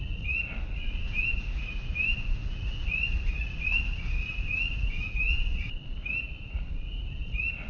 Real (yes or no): no